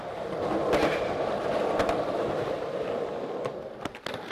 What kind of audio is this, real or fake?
real